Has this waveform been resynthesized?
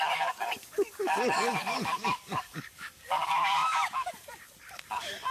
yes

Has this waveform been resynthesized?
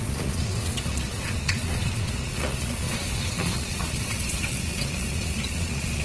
yes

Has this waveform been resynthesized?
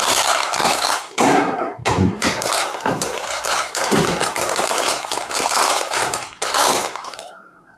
yes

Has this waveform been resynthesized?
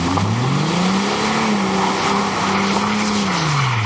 no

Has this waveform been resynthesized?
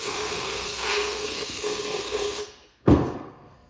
yes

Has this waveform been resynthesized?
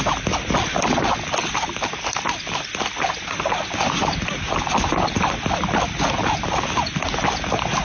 no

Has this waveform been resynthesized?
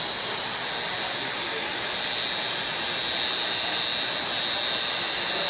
no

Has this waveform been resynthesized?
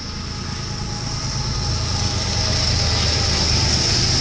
no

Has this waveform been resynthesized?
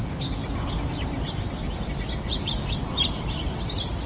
no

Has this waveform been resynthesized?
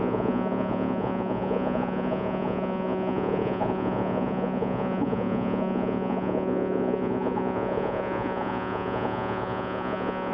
yes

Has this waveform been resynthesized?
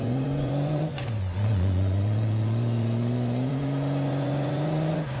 yes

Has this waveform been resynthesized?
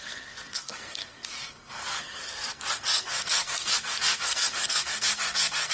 yes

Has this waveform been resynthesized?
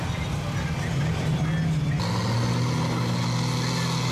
no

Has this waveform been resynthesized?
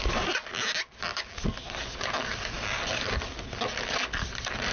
no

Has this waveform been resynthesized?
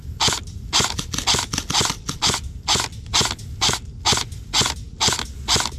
no